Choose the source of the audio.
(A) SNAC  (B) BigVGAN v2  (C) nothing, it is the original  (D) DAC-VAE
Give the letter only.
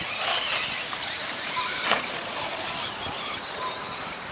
B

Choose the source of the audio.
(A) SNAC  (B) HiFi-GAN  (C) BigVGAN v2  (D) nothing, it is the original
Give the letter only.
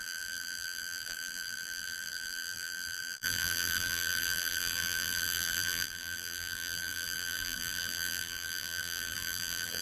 C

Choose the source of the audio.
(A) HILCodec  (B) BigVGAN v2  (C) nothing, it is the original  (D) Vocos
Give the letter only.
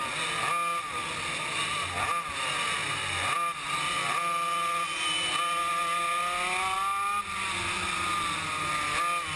C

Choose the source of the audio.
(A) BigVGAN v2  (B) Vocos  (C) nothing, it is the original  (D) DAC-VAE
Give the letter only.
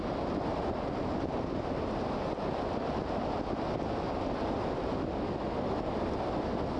C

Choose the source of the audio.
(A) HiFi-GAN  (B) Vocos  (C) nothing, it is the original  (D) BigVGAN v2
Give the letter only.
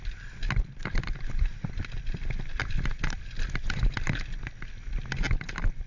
C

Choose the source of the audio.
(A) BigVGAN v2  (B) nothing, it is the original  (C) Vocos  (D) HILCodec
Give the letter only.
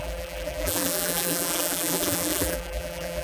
A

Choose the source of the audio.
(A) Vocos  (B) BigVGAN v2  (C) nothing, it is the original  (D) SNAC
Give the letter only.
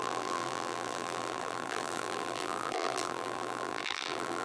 B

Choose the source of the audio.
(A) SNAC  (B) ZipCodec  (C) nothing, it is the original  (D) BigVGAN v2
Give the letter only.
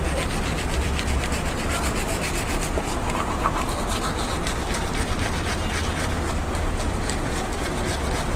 C